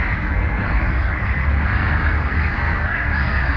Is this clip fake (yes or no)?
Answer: yes